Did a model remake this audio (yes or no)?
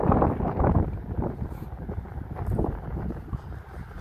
no